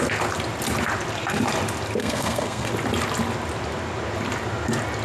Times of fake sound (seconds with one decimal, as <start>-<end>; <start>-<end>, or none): 2.0-2.7